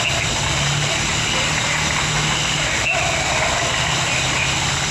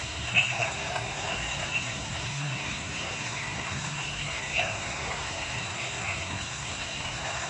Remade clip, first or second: second